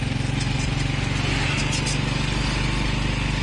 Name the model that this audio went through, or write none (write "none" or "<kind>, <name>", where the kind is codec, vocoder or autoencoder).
none